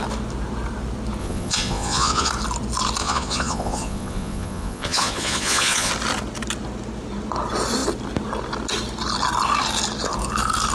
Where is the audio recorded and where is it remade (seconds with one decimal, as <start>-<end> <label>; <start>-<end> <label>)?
0.0-1.2 recorded; 1.2-2.3 remade; 2.3-3.0 recorded; 3.0-5.9 remade; 5.9-10.7 recorded